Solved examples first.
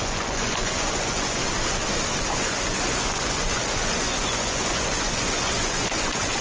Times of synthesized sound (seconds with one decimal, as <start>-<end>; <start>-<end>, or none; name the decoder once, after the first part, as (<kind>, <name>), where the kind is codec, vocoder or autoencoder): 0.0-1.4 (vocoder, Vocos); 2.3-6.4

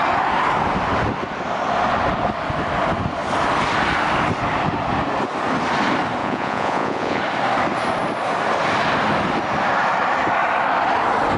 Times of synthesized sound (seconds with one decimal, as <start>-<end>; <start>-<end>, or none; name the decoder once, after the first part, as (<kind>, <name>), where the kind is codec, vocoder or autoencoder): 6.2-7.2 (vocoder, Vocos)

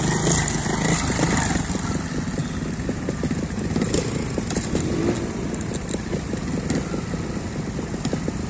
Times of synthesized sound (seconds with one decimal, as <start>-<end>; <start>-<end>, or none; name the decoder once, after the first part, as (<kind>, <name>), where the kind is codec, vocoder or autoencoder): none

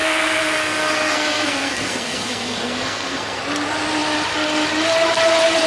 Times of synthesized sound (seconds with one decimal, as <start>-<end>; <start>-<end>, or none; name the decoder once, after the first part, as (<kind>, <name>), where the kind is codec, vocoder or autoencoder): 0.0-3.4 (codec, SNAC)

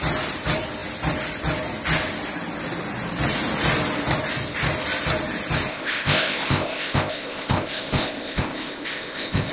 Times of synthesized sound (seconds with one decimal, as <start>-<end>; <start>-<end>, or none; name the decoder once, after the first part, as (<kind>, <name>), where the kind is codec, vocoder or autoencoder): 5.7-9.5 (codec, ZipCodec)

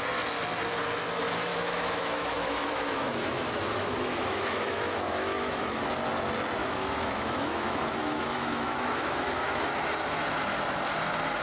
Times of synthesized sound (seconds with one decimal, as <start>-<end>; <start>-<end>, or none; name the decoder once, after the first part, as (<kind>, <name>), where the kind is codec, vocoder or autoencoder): 1.5-5.8 (autoencoder, DAC-VAE); 6.6-9.7

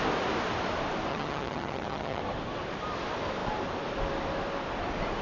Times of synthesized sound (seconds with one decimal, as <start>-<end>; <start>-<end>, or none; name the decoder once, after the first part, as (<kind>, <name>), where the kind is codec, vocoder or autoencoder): 1.1-2.2 (vocoder, HiFi-GAN)

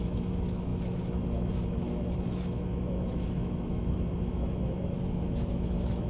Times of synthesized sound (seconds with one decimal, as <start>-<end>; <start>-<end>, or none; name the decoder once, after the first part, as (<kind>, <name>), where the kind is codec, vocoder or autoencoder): 0.0-6.1 (autoencoder, DAC-VAE)